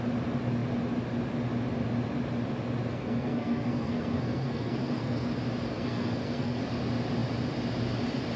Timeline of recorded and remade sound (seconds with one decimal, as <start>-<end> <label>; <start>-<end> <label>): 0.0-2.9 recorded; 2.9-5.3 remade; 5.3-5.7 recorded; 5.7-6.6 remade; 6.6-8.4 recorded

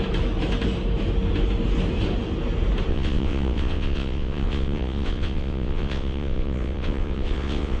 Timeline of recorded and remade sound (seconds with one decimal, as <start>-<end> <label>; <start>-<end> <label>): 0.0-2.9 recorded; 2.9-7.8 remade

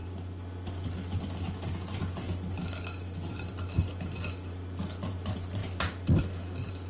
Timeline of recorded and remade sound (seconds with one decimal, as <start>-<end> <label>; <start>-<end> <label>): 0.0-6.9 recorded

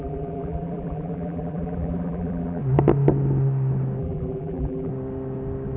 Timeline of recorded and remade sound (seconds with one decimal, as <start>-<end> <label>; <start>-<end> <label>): 0.0-2.6 remade; 2.6-4.0 recorded; 4.0-4.9 remade; 4.9-5.8 recorded

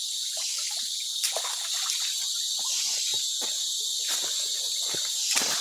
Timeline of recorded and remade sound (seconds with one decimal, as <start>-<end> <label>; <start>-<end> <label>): 0.0-5.6 recorded

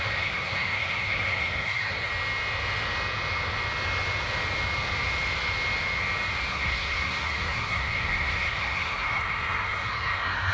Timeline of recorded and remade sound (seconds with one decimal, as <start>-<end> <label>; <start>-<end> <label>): 0.0-2.1 remade; 2.1-6.5 recorded; 6.5-10.5 remade